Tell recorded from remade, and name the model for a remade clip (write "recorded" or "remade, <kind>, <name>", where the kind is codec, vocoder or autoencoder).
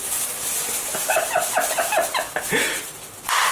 recorded